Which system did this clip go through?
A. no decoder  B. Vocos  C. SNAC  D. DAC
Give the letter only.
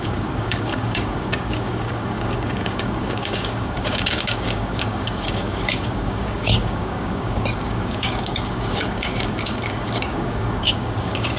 D